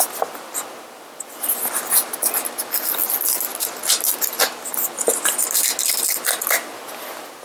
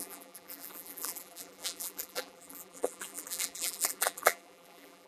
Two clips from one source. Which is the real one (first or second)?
first